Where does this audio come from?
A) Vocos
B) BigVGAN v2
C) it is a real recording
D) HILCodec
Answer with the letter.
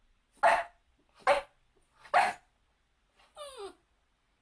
C